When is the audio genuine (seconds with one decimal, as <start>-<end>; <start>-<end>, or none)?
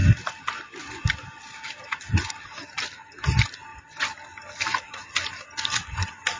0.0-6.4